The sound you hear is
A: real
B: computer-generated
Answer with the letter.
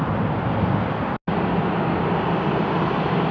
A